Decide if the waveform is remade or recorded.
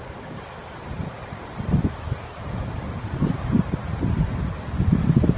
remade